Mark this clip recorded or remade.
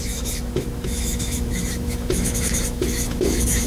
remade